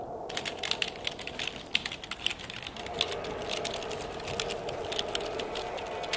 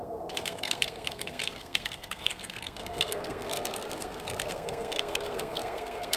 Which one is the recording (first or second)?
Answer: first